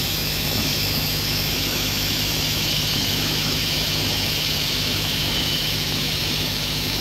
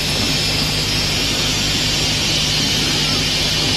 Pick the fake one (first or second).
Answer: first